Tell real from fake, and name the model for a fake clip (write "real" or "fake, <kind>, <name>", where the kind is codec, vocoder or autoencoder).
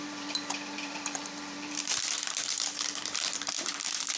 fake, vocoder, BigVGAN v2